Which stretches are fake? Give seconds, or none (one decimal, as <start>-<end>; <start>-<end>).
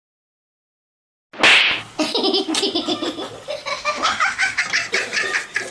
3.7-4.6